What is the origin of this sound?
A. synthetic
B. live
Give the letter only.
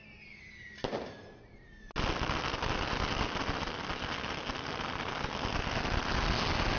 B